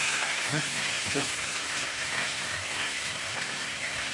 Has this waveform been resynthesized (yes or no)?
yes